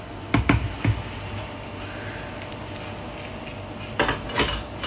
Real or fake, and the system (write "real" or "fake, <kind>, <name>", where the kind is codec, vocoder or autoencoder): real